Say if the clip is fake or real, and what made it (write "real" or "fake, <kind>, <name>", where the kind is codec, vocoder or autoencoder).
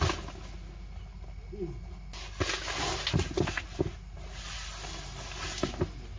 real